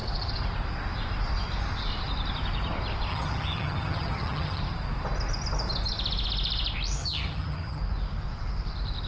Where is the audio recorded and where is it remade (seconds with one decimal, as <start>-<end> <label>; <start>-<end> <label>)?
0.0-3.1 recorded; 3.1-4.6 remade; 4.6-7.0 recorded; 7.0-7.8 remade; 7.8-9.1 recorded